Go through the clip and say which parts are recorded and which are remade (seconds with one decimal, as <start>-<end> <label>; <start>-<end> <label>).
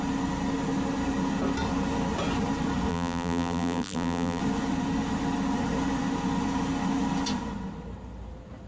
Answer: 0.0-2.9 recorded; 2.9-4.4 remade; 4.4-8.7 recorded